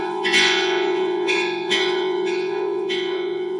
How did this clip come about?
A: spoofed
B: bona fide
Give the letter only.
A